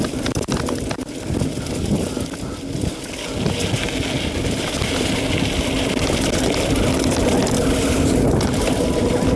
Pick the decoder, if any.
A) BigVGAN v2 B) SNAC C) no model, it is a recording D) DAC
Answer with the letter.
C